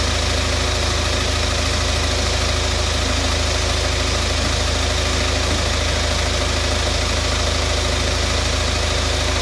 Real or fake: real